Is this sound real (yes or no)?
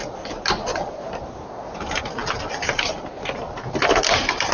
yes